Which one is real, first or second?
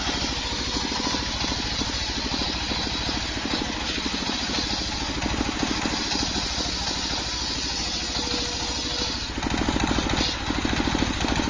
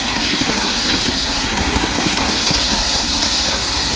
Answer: first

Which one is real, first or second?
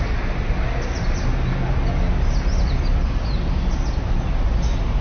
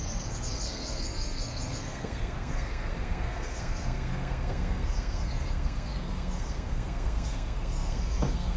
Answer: first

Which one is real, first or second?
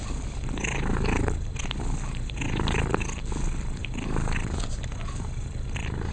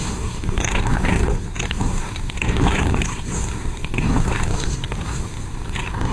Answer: first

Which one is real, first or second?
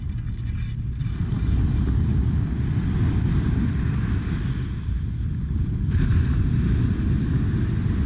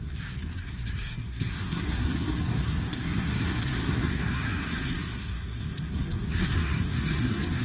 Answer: first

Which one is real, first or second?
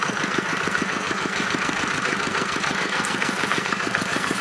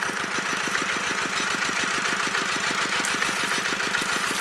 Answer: second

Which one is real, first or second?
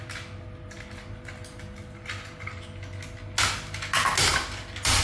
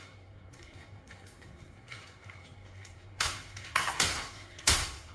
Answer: first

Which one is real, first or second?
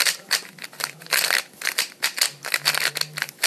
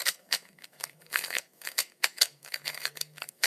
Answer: first